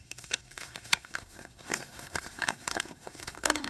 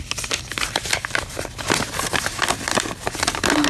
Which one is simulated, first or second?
first